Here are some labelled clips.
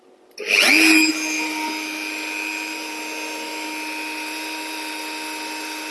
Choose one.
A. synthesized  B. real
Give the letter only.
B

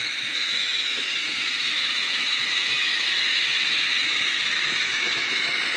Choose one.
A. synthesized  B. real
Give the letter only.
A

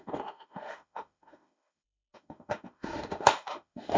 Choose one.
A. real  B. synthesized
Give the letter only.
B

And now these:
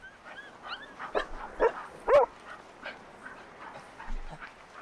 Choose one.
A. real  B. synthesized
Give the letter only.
A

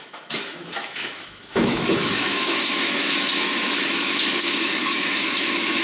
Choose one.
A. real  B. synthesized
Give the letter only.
B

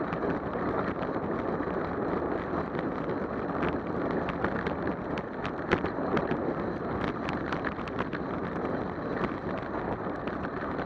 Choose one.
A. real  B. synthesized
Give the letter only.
A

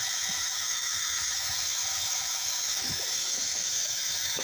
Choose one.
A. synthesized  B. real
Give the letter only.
A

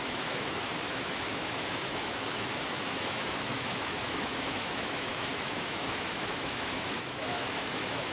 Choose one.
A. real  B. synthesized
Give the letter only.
B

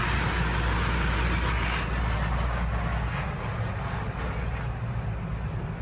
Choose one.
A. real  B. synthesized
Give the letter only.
A